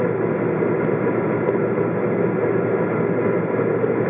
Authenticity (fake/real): real